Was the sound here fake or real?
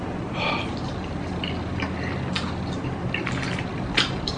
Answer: fake